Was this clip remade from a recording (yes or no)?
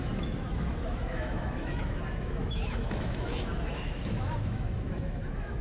yes